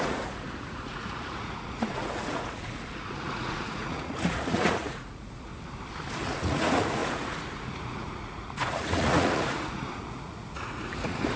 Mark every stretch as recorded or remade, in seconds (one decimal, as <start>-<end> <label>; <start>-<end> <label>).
0.0-5.5 remade; 5.5-6.1 recorded; 6.1-11.4 remade